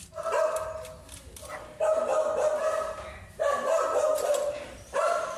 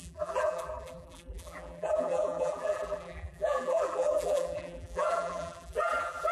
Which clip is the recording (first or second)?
first